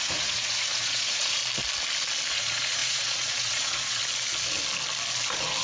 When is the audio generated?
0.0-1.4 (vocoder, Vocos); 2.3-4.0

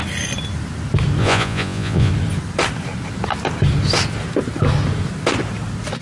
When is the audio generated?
1.2-2.1 (vocoder, Vocos)

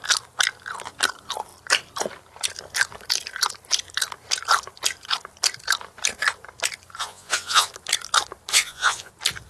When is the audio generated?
7.0-7.7 (vocoder, Vocos); 8.5-9.1

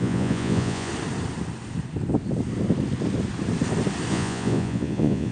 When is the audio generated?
0.0-0.9 (vocoder, Vocos); 4.1-5.3

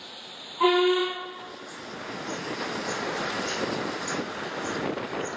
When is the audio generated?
none